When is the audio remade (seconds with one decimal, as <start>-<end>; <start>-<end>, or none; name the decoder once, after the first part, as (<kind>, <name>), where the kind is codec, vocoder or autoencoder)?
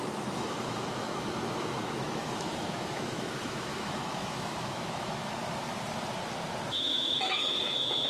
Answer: 0.0-5.4 (autoencoder, DAC-VAE); 6.7-8.1